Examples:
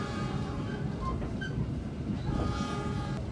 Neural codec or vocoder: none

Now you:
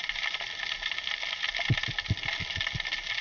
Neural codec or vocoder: none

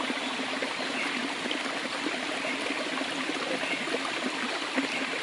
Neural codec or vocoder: none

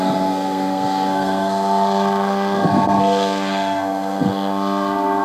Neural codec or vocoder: codec, SNAC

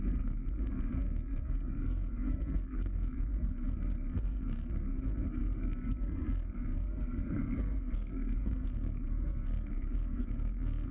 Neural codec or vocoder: codec, SNAC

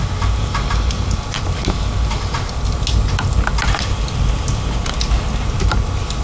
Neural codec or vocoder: none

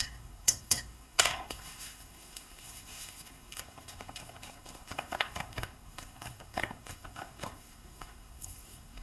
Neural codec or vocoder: codec, SNAC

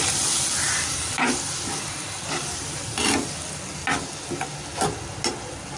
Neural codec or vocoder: none